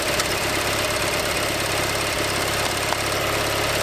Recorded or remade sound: remade